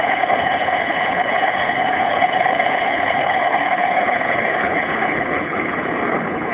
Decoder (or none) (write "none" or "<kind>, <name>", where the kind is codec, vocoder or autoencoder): codec, HILCodec